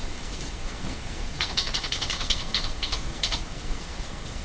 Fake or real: fake